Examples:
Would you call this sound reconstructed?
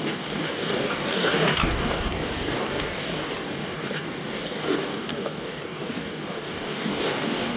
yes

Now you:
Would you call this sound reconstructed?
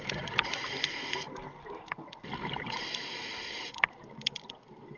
no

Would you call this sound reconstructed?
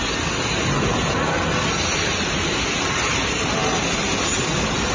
no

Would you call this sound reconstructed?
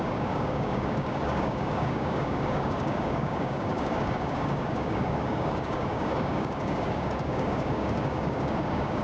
yes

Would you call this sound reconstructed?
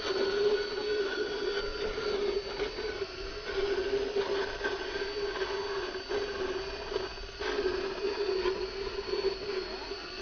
no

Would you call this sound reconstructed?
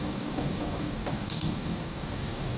yes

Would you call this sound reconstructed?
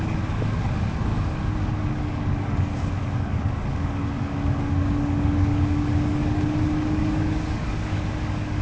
yes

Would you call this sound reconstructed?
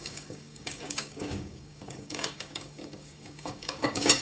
yes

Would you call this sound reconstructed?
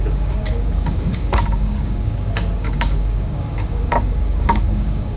yes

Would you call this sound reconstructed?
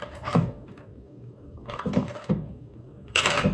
yes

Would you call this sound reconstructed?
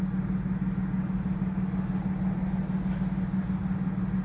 no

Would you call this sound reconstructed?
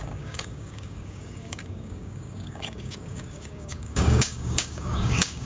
yes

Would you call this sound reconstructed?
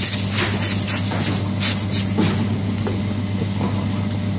no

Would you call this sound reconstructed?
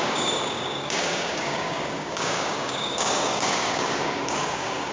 yes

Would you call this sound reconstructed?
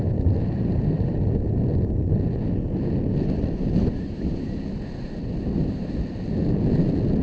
no